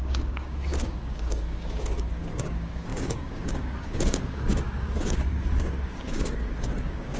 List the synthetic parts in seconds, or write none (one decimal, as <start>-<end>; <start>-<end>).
0.0-7.2